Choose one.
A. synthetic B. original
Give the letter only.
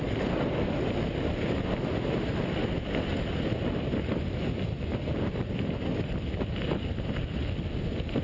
B